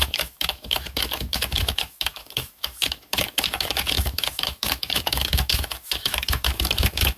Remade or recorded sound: remade